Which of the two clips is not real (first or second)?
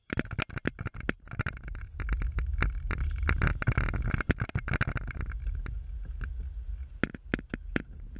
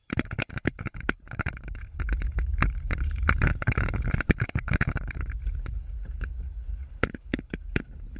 second